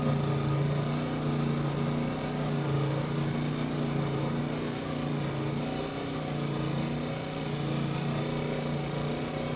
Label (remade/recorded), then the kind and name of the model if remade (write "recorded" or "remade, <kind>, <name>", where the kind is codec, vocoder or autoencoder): recorded